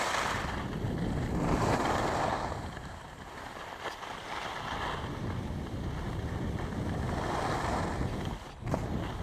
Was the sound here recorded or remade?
recorded